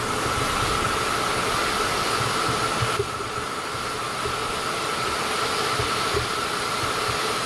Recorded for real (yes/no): yes